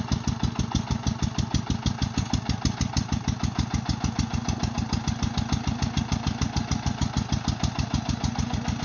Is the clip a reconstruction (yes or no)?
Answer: no